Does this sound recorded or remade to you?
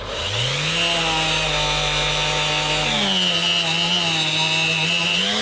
recorded